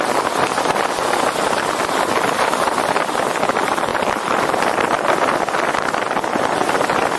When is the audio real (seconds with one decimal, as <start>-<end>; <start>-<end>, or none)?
0.0-7.2